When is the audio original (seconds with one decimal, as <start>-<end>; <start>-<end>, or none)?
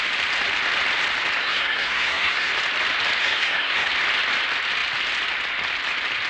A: 0.0-1.4; 2.5-3.2; 3.9-6.3